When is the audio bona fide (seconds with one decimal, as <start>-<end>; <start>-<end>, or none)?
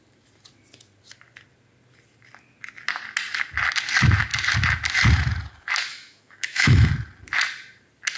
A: 0.0-5.9; 6.9-8.2